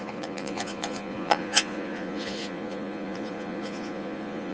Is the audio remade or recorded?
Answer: remade